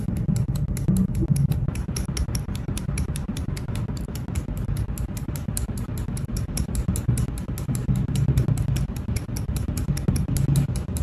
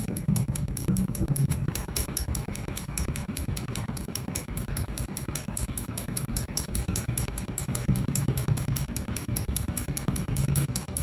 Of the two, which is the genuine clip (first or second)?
first